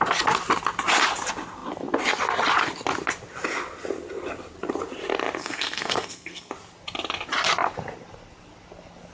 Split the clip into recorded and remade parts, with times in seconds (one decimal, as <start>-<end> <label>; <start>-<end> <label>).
0.0-5.4 recorded; 5.4-6.5 remade; 6.5-9.1 recorded